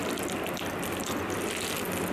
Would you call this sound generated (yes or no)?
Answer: no